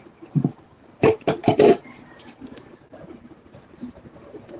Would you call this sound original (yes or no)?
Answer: no